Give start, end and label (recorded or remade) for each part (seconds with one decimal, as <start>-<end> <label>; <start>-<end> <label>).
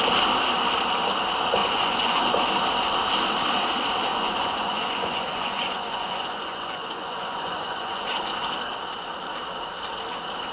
0.0-1.6 recorded; 1.6-2.2 remade; 2.2-4.1 recorded; 4.1-8.1 remade; 8.1-10.5 recorded